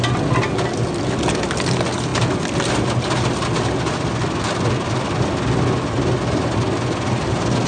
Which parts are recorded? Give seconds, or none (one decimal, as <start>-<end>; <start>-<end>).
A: 0.0-7.7